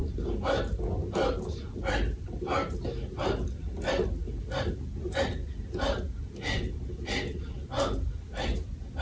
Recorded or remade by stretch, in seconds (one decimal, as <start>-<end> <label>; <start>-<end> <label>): 0.0-9.0 recorded